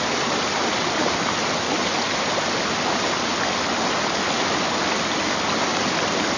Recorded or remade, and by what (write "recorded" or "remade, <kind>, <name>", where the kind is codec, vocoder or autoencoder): recorded